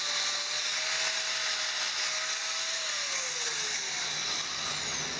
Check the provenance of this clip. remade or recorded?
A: recorded